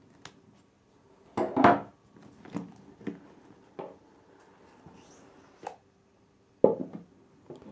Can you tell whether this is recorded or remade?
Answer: recorded